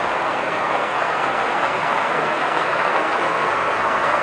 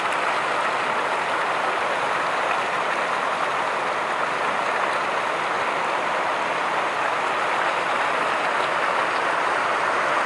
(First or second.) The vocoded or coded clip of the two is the first